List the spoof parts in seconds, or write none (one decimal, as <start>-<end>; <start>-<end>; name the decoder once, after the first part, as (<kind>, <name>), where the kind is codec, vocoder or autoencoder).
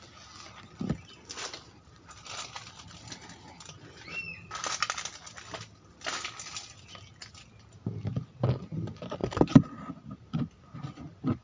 none